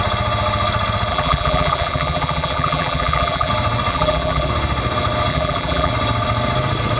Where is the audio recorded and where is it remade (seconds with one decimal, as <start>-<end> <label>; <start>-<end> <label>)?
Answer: 0.0-1.1 recorded; 1.1-3.5 remade; 3.5-3.9 recorded; 3.9-4.5 remade; 4.5-5.3 recorded; 5.3-5.9 remade; 5.9-7.0 recorded